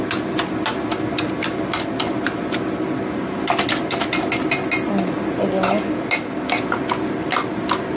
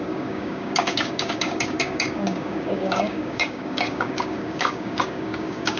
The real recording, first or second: first